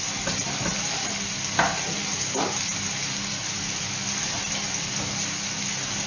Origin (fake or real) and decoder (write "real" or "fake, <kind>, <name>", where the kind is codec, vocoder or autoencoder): real